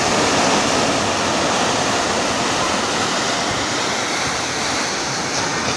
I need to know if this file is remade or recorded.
recorded